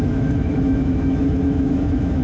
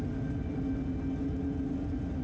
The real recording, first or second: second